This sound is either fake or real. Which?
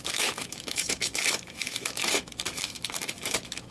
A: fake